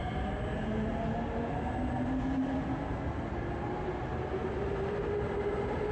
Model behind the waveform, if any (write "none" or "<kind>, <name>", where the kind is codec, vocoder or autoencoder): none